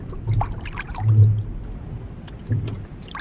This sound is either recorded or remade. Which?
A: recorded